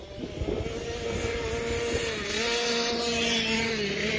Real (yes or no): yes